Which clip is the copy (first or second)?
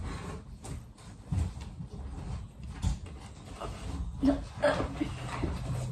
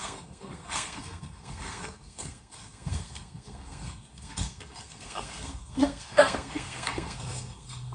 second